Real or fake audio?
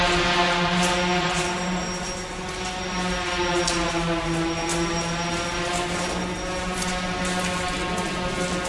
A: real